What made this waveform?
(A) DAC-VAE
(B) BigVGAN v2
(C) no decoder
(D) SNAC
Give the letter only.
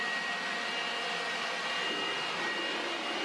C